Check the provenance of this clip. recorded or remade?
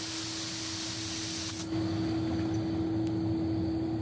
recorded